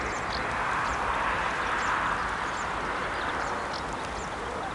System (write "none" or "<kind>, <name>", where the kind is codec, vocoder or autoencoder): none